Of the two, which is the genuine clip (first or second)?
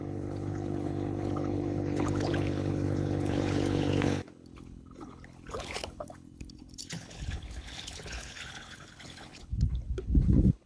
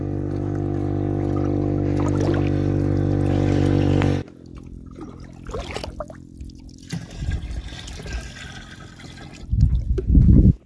second